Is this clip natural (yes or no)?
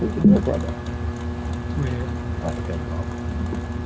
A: yes